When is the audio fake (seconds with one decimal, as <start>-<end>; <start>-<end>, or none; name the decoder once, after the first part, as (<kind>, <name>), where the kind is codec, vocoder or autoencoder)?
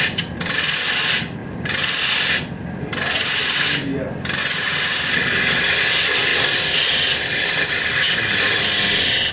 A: none